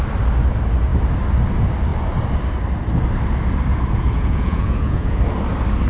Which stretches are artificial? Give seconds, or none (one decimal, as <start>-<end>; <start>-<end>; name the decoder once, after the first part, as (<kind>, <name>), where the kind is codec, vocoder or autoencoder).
3.7-5.2 (vocoder, Vocos)